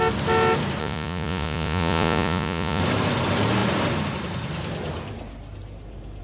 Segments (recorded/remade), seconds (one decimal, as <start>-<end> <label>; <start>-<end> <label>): 0.0-0.8 recorded; 0.8-2.8 remade; 2.8-6.2 recorded